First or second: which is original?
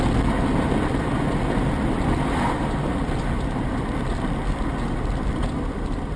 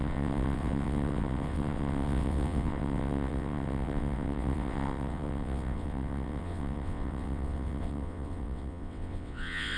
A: first